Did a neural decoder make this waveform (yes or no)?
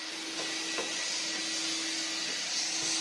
no